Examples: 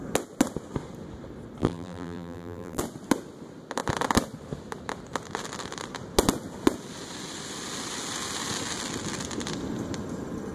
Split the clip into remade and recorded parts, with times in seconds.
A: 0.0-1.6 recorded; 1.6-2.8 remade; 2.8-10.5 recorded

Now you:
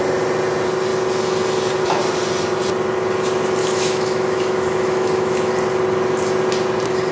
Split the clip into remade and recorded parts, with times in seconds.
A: 0.0-3.6 recorded; 3.6-5.5 remade; 5.5-7.1 recorded

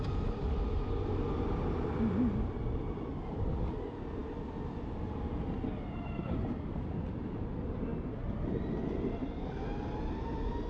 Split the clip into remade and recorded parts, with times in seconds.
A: 0.0-10.7 recorded

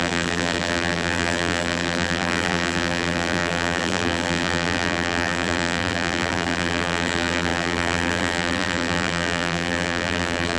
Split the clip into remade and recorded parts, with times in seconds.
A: 0.0-10.6 remade

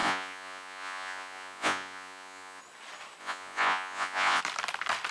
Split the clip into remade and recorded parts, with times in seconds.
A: 0.0-2.6 remade; 2.6-3.2 recorded; 3.2-4.4 remade; 4.4-5.1 recorded

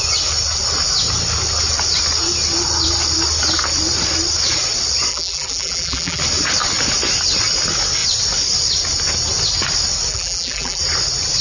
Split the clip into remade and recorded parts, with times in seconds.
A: 0.0-5.1 recorded; 5.1-6.2 remade; 6.2-10.1 recorded; 10.1-10.8 remade; 10.8-11.4 recorded

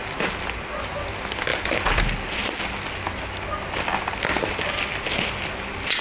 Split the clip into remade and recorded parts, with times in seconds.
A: 0.0-6.0 recorded

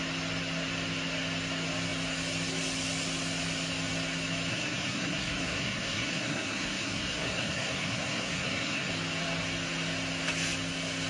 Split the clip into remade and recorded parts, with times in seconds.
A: 0.0-4.5 recorded; 4.5-8.9 remade; 8.9-11.1 recorded